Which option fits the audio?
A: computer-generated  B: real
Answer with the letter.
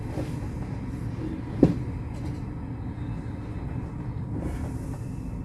B